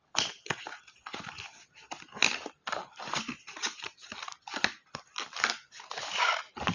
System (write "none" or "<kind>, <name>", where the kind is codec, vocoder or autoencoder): none